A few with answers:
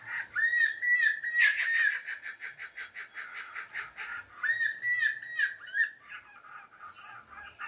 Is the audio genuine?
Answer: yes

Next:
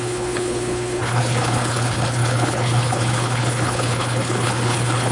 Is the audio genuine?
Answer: no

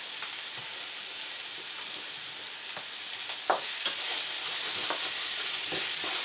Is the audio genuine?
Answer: yes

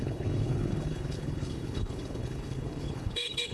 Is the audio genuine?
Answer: no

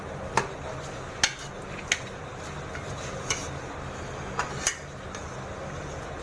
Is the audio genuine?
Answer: yes